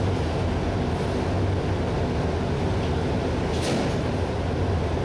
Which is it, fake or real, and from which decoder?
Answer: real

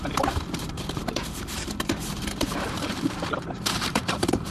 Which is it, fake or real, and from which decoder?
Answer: fake, vocoder, BigVGAN v2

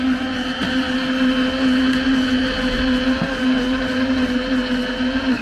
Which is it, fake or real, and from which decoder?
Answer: real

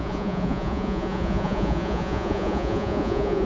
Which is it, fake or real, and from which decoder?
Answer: fake, vocoder, Vocos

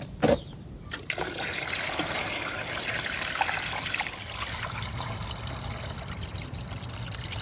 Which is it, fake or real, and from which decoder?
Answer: real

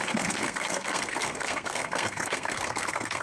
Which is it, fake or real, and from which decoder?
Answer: fake, codec, SNAC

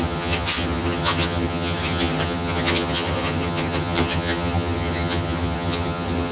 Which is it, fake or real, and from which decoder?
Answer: fake, vocoder, HiFi-GAN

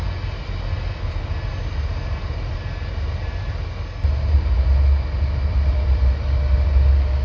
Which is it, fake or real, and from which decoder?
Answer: real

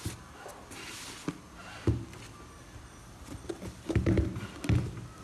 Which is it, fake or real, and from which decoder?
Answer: real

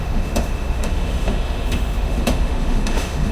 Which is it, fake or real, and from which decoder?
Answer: fake, autoencoder, DAC-VAE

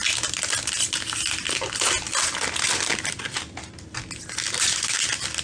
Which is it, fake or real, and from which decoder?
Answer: real